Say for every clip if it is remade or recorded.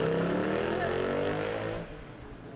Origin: recorded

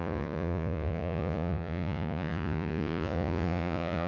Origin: remade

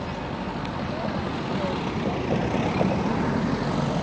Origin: recorded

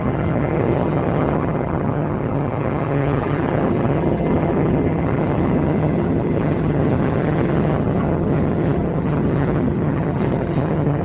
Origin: remade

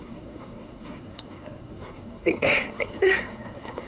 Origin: remade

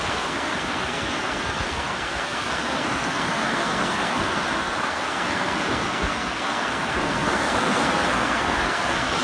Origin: remade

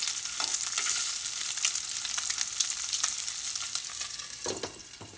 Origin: recorded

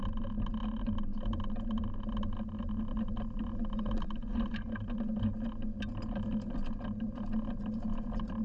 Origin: recorded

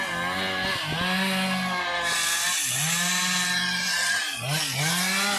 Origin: recorded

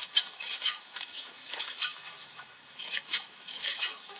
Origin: remade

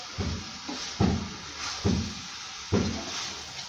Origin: recorded